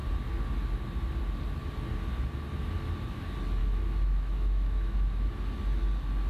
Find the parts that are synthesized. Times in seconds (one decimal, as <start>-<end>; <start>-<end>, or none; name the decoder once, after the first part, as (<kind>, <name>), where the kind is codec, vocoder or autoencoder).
3.6-5.3 (autoencoder, DAC-VAE)